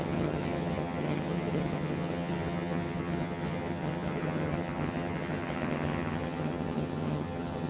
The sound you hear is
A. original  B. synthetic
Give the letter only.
B